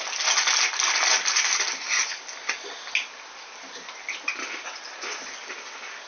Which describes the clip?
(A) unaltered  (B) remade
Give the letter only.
A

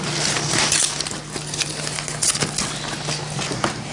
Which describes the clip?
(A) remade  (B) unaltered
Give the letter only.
B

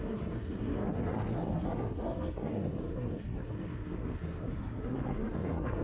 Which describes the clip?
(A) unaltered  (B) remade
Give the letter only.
B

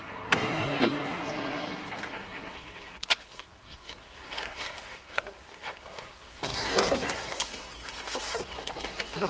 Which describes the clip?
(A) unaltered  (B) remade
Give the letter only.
B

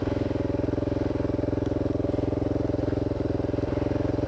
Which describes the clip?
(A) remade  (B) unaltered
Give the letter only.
B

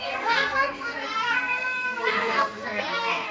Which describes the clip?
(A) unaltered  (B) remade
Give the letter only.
B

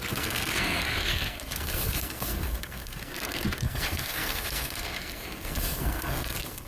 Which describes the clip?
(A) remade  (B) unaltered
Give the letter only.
A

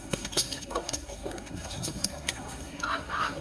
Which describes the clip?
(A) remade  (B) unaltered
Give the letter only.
A